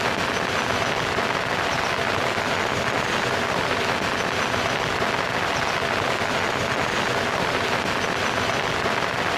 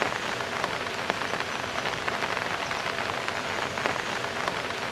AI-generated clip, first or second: second